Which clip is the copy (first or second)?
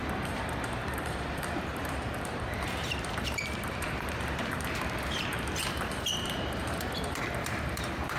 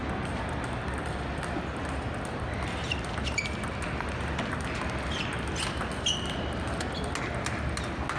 first